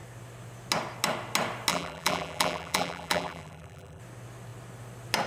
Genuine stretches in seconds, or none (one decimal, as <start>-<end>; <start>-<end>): 0.0-1.7; 4.0-5.3